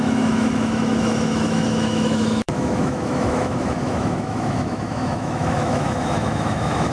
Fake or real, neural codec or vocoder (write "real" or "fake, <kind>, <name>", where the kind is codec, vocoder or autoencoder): fake, autoencoder, DAC-VAE